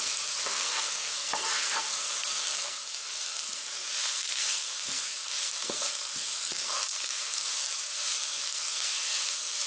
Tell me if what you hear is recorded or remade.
remade